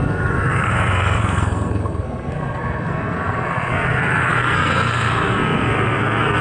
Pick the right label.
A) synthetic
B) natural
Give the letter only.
A